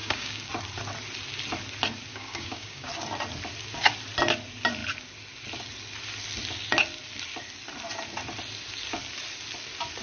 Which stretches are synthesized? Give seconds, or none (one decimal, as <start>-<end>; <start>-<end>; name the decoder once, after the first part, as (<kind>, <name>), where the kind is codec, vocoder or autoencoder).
0.0-0.5 (codec, DAC); 2.1-2.9